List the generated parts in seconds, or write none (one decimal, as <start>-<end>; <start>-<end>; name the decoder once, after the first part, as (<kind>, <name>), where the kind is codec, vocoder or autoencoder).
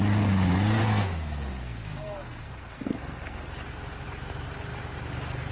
0.8-3.5 (codec, SNAC)